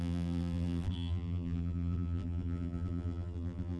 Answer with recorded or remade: remade